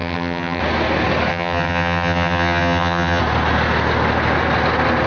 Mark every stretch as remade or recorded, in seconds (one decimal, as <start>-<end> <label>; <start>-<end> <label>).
0.0-0.6 remade; 0.6-1.3 recorded; 1.3-3.2 remade; 3.2-5.1 recorded